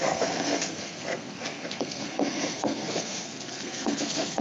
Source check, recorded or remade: remade